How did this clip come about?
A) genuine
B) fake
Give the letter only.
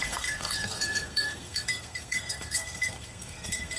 B